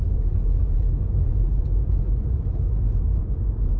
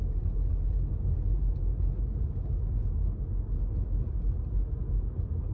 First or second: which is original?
second